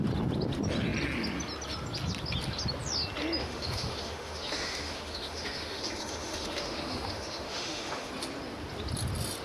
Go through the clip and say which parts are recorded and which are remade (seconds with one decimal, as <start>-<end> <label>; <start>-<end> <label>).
0.0-3.4 recorded; 3.4-8.1 remade; 8.1-9.4 recorded

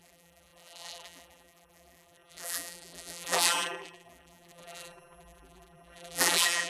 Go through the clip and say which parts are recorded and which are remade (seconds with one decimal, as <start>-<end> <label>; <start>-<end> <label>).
0.0-6.7 remade